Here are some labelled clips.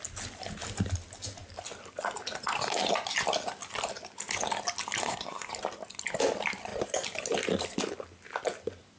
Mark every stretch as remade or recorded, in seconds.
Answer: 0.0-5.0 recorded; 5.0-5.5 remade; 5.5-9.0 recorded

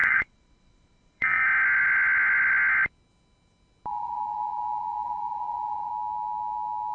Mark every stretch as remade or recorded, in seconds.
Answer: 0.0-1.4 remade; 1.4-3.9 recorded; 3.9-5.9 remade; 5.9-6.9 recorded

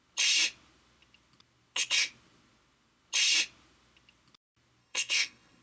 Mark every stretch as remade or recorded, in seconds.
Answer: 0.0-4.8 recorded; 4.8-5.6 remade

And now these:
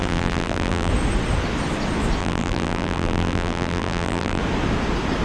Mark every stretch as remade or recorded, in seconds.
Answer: 0.0-0.9 remade; 0.9-2.2 recorded; 2.2-4.4 remade; 4.4-5.2 recorded

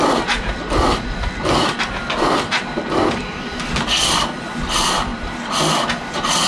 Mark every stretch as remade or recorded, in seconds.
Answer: 0.0-6.5 recorded

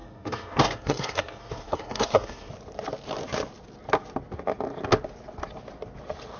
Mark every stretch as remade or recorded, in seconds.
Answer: 0.0-2.5 remade; 2.5-6.4 recorded

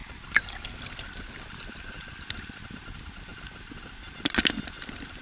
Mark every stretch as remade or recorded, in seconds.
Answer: 0.0-5.2 recorded

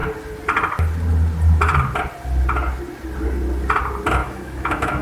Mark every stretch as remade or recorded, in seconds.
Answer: 0.0-4.2 recorded; 4.2-5.0 remade